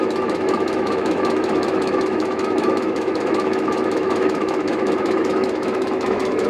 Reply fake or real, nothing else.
fake